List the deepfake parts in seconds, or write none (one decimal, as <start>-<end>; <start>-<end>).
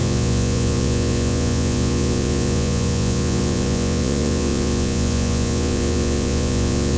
0.0-7.0